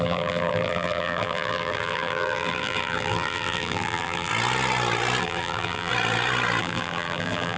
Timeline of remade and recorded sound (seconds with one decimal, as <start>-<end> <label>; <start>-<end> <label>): 0.0-4.3 remade; 4.3-5.2 recorded; 5.2-5.9 remade; 5.9-6.6 recorded; 6.6-7.6 remade